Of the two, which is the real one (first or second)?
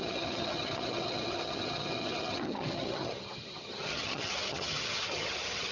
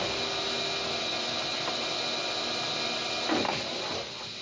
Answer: second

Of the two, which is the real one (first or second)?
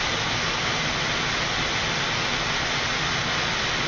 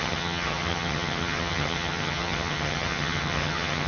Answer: first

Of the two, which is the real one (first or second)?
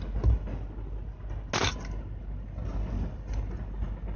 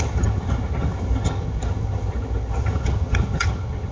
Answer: first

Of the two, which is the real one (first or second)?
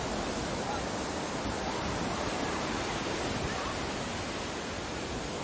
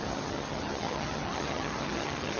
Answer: first